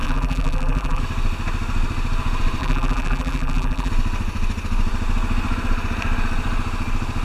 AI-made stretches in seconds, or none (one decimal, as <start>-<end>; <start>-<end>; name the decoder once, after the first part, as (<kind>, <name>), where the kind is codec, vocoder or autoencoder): 0.0-1.0 (vocoder, BigVGAN v2); 2.6-3.9